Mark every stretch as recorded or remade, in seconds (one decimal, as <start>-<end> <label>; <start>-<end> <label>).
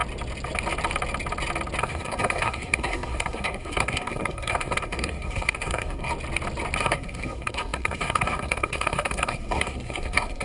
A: 0.0-1.8 recorded; 1.8-6.1 remade; 6.1-6.8 recorded; 6.8-10.4 remade